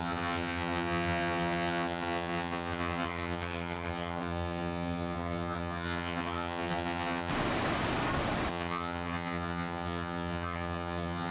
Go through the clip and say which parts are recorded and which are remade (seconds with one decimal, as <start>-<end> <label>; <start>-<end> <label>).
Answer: 0.0-7.3 remade; 7.3-8.5 recorded; 8.5-11.3 remade